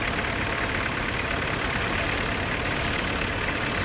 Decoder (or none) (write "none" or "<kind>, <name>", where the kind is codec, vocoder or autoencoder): none